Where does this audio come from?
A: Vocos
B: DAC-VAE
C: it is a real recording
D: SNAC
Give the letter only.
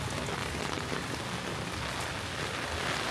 C